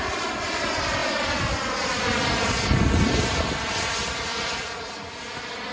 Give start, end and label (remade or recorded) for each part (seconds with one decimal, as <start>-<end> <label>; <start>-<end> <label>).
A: 0.0-4.3 recorded; 4.3-5.1 remade; 5.1-5.7 recorded